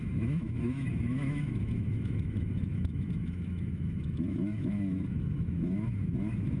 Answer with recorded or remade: remade